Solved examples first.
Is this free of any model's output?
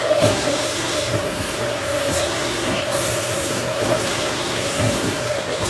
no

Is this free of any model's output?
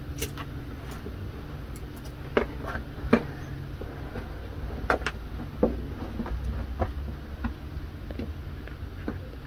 yes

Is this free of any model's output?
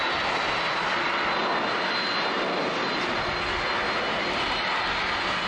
yes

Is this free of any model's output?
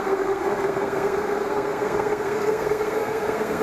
no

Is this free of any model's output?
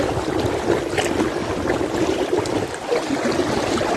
yes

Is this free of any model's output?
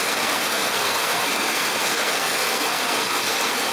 no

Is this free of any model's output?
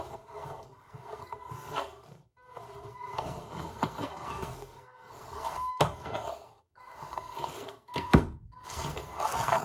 no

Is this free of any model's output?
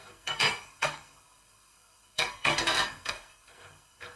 no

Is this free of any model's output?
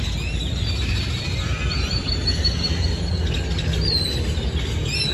yes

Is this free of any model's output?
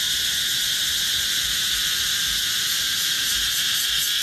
yes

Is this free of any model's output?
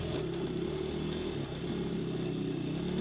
yes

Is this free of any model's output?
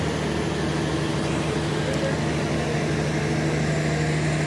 yes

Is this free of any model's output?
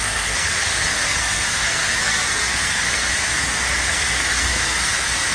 no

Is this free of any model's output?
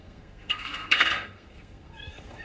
no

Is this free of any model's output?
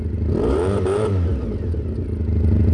yes